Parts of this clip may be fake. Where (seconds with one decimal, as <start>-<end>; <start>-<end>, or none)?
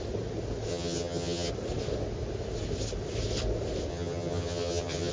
0.7-1.5; 3.9-5.1